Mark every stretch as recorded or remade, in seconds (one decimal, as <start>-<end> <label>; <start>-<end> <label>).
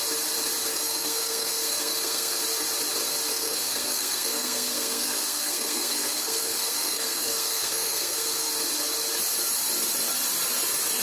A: 0.0-0.7 recorded; 0.7-2.4 remade; 2.4-3.3 recorded; 3.3-8.5 remade; 8.5-11.0 recorded